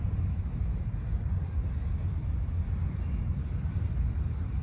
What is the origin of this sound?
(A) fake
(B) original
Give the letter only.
B